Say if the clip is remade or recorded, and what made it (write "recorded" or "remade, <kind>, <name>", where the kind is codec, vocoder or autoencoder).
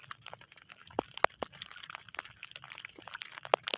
recorded